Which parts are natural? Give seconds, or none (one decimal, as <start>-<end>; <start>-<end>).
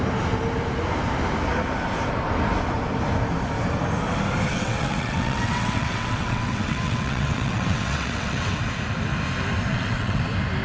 0.0-4.5; 8.5-9.7; 10.2-10.6